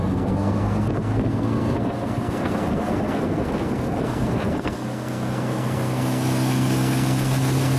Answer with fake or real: fake